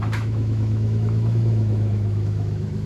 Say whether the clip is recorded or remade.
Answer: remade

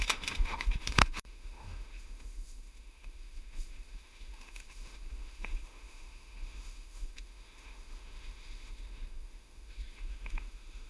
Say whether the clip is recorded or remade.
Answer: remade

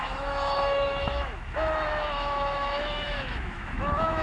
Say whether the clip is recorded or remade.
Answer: remade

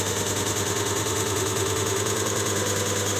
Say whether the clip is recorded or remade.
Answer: remade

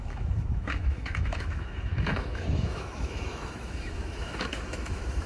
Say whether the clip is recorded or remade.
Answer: remade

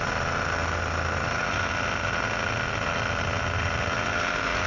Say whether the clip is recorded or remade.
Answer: recorded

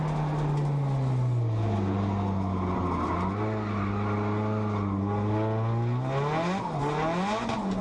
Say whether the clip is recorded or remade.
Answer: recorded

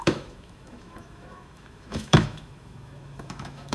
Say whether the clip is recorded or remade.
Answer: remade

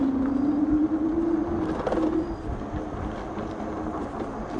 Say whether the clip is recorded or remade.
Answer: recorded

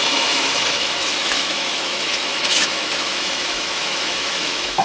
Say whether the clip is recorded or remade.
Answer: remade